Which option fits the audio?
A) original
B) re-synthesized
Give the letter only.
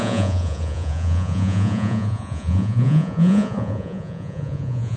B